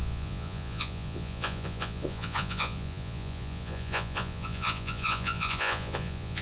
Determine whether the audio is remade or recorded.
remade